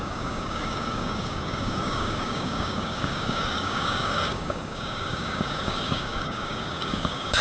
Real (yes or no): no